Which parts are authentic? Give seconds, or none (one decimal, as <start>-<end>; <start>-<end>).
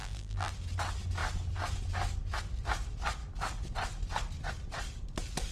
0.5-5.5